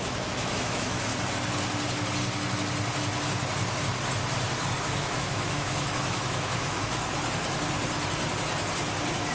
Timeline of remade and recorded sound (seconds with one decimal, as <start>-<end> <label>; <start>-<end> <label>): 0.0-1.1 remade; 1.1-4.8 recorded; 4.8-7.0 remade; 7.0-9.3 recorded